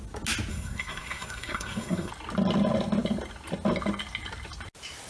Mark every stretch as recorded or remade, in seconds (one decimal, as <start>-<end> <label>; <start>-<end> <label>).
0.0-0.5 recorded; 0.5-2.1 remade; 2.1-5.1 recorded